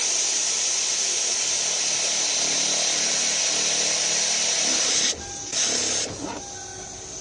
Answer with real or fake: real